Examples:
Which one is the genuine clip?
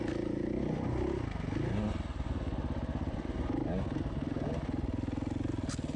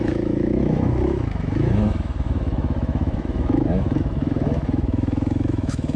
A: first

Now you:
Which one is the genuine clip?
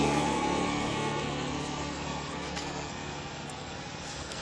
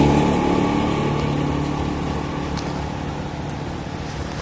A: second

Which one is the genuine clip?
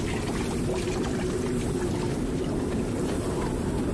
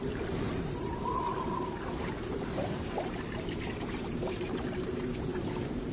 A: first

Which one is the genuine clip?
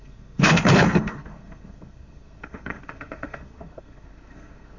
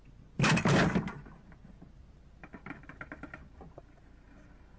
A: second